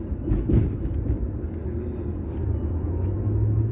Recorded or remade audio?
recorded